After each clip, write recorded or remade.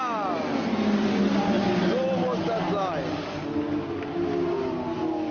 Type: recorded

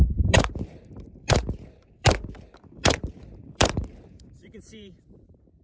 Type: remade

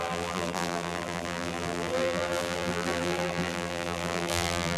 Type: remade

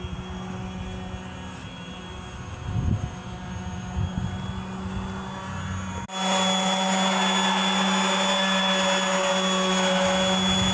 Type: recorded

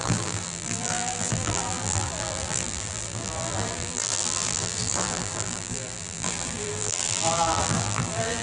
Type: remade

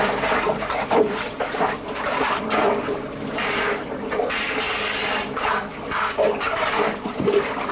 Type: remade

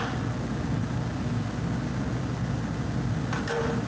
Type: recorded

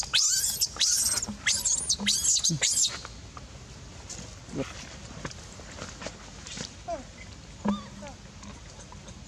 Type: recorded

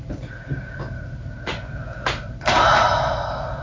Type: recorded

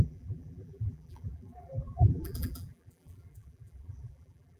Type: remade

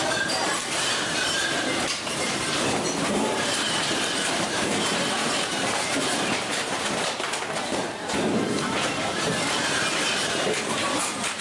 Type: remade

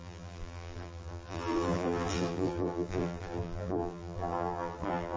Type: remade